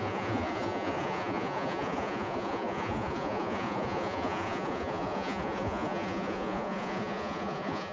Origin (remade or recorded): remade